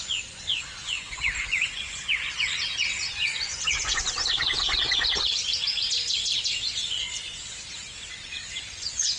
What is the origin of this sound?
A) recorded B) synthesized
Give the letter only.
B